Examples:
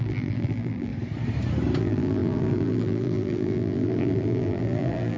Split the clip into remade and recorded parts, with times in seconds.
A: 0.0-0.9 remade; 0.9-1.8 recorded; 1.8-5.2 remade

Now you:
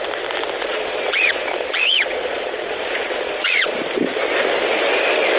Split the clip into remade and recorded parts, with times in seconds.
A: 0.0-0.6 recorded; 0.6-3.8 remade; 3.8-5.4 recorded

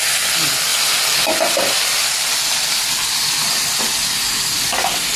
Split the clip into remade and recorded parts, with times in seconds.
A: 0.0-5.2 recorded

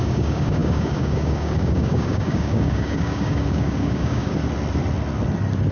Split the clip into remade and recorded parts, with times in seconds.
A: 0.0-4.4 remade; 4.4-5.7 recorded

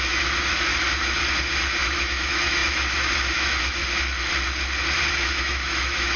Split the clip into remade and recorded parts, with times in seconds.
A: 0.0-0.7 remade; 0.7-1.8 recorded; 1.8-3.8 remade; 3.8-5.1 recorded; 5.1-6.2 remade